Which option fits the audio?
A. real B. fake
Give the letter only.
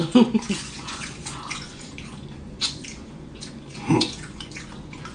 B